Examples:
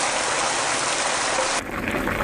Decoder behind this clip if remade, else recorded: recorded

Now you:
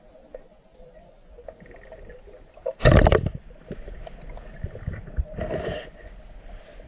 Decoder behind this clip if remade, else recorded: recorded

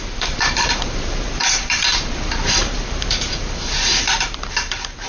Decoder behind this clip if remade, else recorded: remade, vocoder, BigVGAN v2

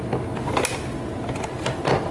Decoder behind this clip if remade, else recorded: recorded